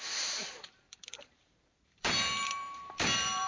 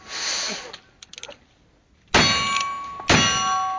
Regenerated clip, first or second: first